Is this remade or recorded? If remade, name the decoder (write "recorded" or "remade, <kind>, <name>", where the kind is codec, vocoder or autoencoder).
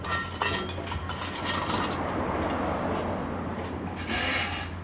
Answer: recorded